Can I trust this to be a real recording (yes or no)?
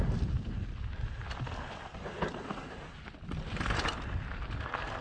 yes